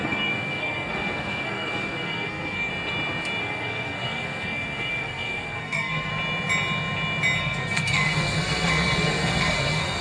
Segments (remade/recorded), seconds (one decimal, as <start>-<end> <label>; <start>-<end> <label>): 0.0-2.7 remade; 2.7-3.4 recorded; 3.4-6.1 remade; 6.1-7.4 recorded; 7.4-10.0 remade